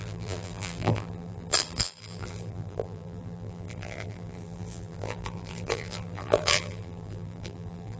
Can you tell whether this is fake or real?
fake